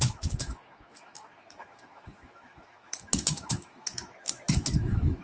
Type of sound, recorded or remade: remade